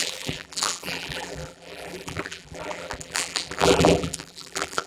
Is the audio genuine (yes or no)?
no